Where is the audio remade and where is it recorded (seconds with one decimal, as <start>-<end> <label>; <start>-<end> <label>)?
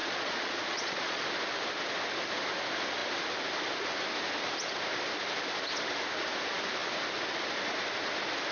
0.0-1.2 remade; 1.2-8.5 recorded